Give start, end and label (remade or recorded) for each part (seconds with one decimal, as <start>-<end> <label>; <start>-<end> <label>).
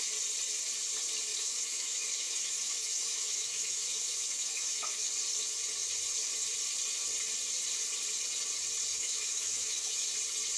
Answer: 0.0-1.3 recorded; 1.3-5.1 remade; 5.1-8.9 recorded; 8.9-10.1 remade; 10.1-10.6 recorded